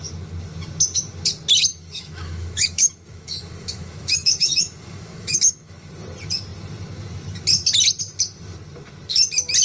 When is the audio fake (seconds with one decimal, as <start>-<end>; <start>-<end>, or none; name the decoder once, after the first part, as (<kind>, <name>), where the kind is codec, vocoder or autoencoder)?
1.7-5.9 (autoencoder, DAC-VAE)